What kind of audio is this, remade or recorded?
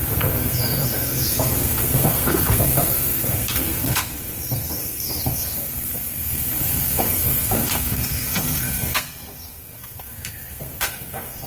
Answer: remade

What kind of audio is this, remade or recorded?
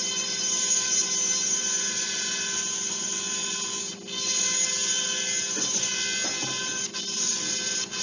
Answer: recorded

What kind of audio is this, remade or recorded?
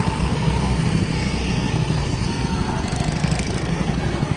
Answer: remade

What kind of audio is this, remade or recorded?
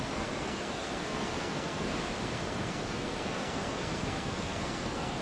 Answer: remade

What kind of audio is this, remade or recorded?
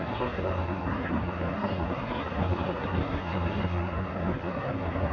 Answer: remade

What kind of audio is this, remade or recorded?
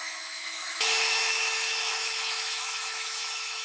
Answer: remade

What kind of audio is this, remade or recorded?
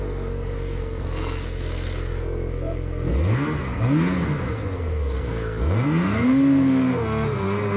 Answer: remade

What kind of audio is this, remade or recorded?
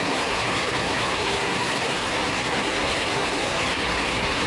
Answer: remade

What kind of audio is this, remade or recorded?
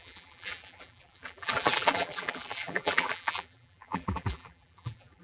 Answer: remade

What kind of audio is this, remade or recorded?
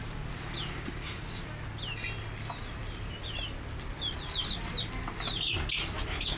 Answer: recorded